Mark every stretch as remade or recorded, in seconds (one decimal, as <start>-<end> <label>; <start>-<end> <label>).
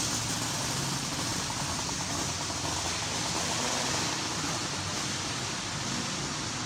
0.0-6.7 recorded